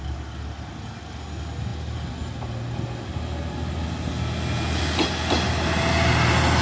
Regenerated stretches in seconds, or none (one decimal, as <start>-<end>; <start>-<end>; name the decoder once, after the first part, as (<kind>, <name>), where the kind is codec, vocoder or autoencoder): none